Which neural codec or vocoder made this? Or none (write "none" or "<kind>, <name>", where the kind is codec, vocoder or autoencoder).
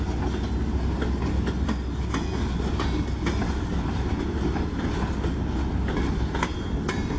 none